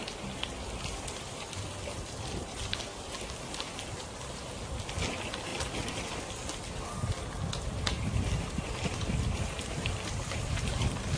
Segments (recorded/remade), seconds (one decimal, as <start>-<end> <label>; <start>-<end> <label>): 0.0-11.2 recorded